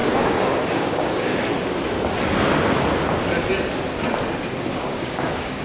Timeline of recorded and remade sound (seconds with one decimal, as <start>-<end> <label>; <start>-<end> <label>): 0.0-1.5 remade; 1.5-4.8 recorded; 4.8-5.6 remade